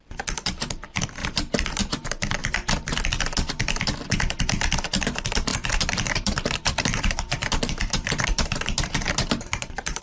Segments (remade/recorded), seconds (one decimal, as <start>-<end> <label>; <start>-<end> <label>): 0.0-5.5 recorded; 5.5-10.0 remade